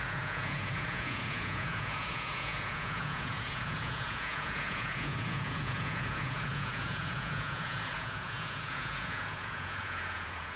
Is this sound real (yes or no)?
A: no